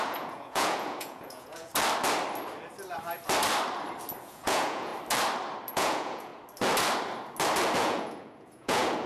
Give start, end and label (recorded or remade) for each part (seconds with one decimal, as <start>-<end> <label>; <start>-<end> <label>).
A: 0.0-1.7 remade; 1.7-4.2 recorded; 4.2-4.9 remade; 4.9-5.7 recorded; 5.7-6.3 remade; 6.3-7.8 recorded; 7.8-9.1 remade